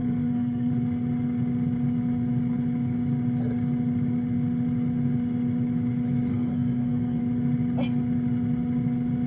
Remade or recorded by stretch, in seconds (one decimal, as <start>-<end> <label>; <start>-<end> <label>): 0.0-0.7 remade; 0.7-6.3 recorded; 6.3-7.2 remade; 7.2-9.3 recorded